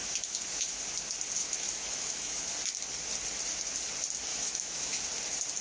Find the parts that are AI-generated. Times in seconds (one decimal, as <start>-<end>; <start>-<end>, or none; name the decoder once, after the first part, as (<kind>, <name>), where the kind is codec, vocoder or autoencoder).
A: 0.0-0.8 (autoencoder, DAC-VAE); 1.4-2.5; 4.3-5.0